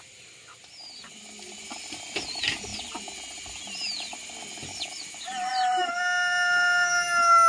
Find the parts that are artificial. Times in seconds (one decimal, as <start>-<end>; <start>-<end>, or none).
none